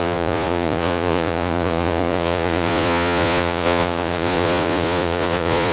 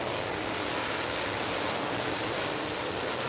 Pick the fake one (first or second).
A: first